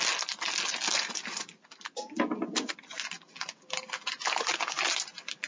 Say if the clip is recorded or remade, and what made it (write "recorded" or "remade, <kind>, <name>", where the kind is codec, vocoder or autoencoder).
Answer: recorded